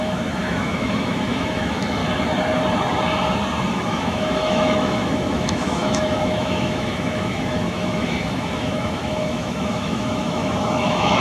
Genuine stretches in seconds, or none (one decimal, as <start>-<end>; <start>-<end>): 2.0-3.7